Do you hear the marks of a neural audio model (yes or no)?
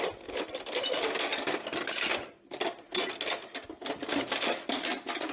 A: no